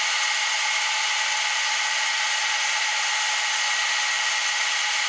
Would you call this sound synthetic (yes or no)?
no